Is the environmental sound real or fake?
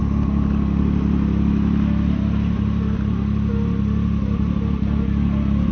real